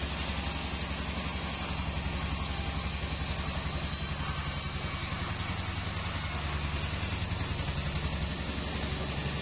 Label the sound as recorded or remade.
recorded